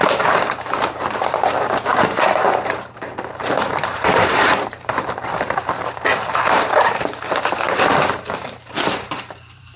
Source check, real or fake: fake